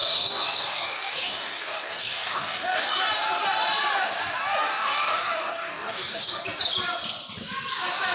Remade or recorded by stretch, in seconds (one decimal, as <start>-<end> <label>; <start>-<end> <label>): 0.0-3.0 remade; 3.0-4.7 recorded; 4.7-6.4 remade; 6.4-8.1 recorded